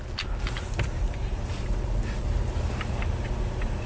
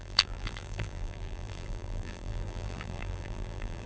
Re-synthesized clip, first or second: second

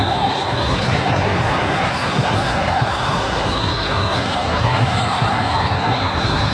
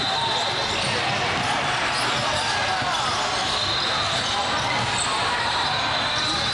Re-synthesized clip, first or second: first